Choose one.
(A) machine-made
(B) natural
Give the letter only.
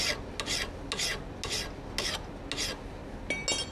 B